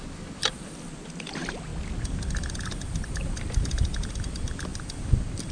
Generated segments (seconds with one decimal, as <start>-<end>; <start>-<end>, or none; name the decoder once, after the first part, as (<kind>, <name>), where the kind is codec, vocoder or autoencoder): none